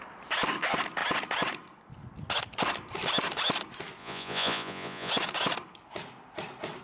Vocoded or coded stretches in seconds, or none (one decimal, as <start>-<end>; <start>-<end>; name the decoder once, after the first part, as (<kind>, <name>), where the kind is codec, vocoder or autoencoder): 4.0-5.1 (vocoder, Vocos)

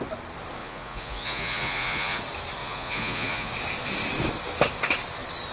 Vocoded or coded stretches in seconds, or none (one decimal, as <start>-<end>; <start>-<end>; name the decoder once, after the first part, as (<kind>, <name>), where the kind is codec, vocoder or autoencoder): 0.6-2.2 (vocoder, Vocos); 2.6-3.5

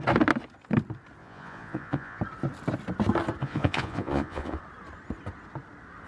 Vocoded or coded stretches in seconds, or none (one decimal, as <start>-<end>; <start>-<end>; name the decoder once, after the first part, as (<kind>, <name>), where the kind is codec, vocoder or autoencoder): 1.2-2.2 (vocoder, Vocos); 3.4-4.6

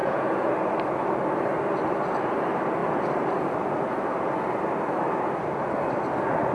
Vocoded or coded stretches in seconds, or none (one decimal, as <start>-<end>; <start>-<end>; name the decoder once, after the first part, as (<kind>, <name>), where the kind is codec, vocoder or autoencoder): 0.0-0.5 (vocoder, Vocos)

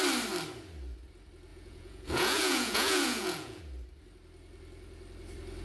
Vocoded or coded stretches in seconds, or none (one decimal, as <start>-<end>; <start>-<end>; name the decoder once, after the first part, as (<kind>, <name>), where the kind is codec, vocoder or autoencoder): 1.5-3.6 (vocoder, Vocos)

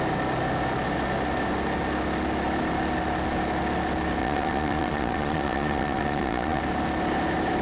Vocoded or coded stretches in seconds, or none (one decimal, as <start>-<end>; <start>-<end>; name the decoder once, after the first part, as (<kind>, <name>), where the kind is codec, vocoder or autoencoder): 4.2-6.6 (vocoder, Vocos)